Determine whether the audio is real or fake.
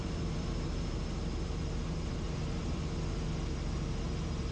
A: real